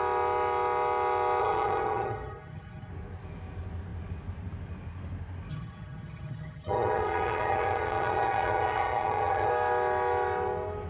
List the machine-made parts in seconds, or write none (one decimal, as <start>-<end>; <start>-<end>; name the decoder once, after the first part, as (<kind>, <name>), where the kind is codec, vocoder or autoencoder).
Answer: 1.4-2.9 (vocoder, HiFi-GAN); 5.5-9.5